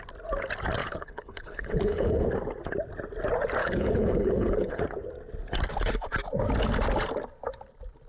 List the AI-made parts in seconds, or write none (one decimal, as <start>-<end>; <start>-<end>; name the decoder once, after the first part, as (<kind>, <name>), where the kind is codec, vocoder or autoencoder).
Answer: 0.8-2.3 (codec, HILCodec); 3.6-4.8